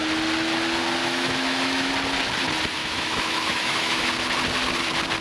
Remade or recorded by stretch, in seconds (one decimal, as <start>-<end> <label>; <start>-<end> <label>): 0.0-1.0 recorded; 1.0-1.9 remade; 1.9-2.8 recorded; 2.8-4.1 remade; 4.1-5.2 recorded